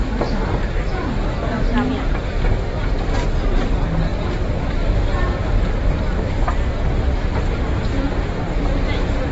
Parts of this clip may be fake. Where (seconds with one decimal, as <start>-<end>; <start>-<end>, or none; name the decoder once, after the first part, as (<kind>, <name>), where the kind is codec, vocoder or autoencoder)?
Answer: none